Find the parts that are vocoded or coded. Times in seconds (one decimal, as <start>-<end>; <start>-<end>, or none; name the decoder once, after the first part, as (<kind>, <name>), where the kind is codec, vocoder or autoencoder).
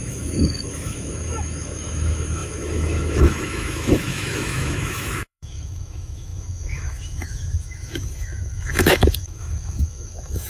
0.0-10.5 (autoencoder, DAC-VAE)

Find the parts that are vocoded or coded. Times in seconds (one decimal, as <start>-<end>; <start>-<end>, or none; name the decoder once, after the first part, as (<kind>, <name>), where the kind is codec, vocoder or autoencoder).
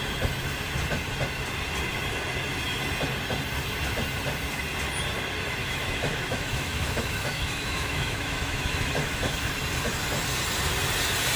5.6-9.5 (autoencoder, DAC-VAE)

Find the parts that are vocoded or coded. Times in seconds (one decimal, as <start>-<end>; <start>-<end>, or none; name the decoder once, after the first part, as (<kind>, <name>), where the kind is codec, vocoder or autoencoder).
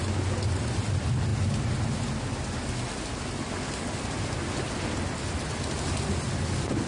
none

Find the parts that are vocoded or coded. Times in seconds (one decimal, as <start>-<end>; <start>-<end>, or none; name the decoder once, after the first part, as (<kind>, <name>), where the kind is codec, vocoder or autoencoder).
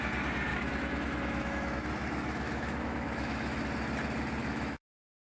0.5-3.6 (autoencoder, DAC-VAE); 4.4-5.2